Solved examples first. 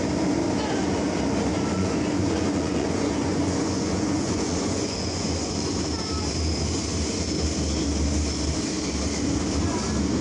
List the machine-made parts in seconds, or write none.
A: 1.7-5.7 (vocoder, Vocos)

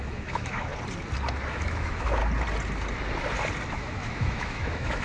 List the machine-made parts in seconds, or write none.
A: 0.0-0.7 (autoencoder, DAC-VAE); 1.5-2.2; 3.7-5.0

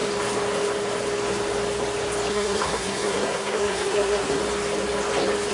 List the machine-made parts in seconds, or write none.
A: 2.3-4.4 (codec, SNAC)

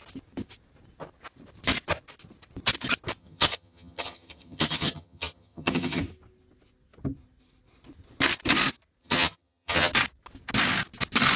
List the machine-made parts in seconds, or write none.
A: 3.2-6.0 (vocoder, HiFi-GAN); 9.0-9.9

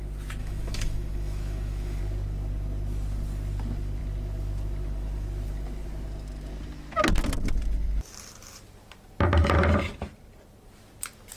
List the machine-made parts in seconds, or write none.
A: 0.4-2.0 (autoencoder, DAC-VAE)

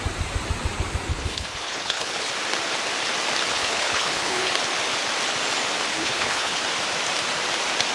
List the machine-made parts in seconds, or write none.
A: 1.1-2.3 (codec, HILCodec); 3.5-4.5; 5.9-6.6